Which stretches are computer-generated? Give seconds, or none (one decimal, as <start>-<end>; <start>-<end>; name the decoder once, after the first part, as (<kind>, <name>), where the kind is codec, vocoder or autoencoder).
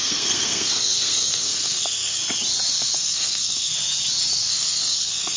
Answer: 0.0-2.2 (codec, SNAC); 2.7-3.7; 4.3-5.4